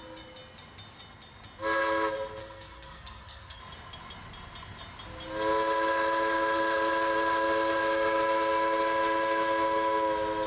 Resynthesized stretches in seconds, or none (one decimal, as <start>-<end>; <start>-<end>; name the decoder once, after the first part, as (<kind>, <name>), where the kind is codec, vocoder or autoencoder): 2.4-3.6 (codec, SNAC)